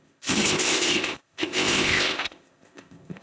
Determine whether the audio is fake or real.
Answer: fake